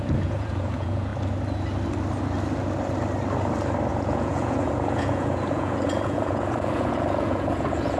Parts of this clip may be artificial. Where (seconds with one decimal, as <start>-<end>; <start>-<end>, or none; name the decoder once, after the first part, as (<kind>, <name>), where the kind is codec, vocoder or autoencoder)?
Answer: 0.0-1.1 (vocoder, Vocos); 3.9-8.0